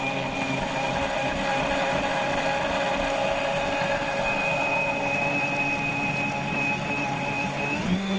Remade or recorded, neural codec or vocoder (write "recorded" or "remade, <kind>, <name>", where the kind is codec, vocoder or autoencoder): recorded